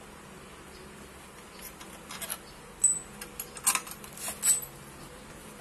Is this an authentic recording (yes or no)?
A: yes